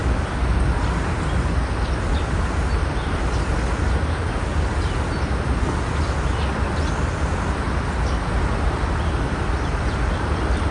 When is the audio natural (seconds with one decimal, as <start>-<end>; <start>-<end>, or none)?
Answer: 0.7-10.7